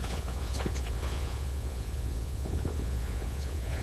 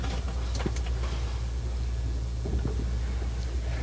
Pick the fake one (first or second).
first